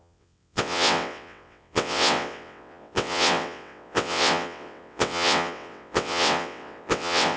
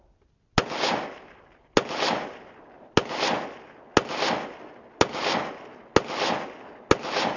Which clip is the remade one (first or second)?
first